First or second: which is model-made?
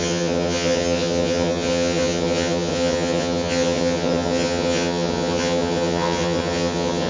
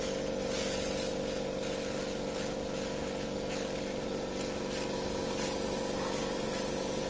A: first